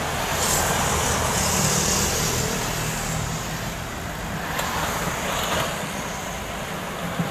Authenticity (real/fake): real